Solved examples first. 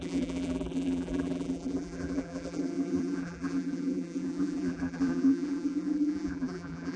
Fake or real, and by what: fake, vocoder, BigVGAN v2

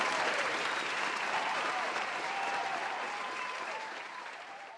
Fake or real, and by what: fake, vocoder, BigVGAN v2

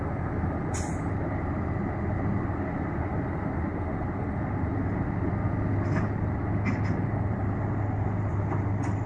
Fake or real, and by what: real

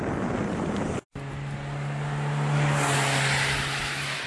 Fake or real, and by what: real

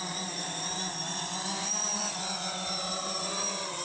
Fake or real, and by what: fake, vocoder, BigVGAN v2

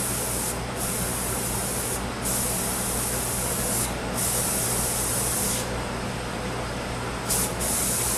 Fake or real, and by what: real